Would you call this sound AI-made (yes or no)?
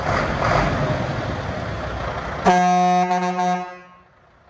no